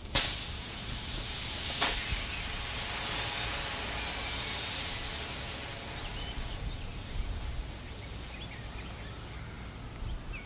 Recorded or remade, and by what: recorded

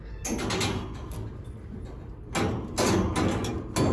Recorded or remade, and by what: recorded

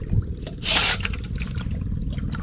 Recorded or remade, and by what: recorded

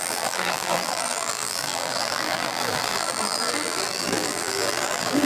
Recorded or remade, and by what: remade, vocoder, BigVGAN v2